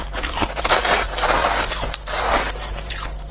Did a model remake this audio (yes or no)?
no